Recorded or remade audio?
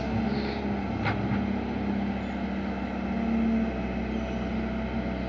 recorded